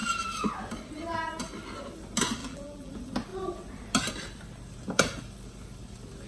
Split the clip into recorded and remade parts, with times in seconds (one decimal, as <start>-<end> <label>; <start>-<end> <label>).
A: 0.0-2.4 recorded; 2.4-2.9 remade; 2.9-6.3 recorded